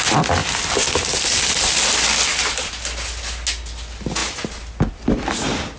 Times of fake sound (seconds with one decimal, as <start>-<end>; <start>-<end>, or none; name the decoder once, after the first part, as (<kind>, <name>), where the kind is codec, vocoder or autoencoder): none